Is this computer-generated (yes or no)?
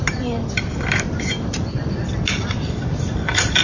yes